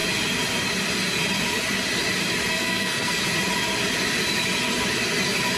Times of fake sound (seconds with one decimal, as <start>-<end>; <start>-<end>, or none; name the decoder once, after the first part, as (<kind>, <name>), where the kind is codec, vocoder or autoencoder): 2.5-3.2 (codec, SNAC)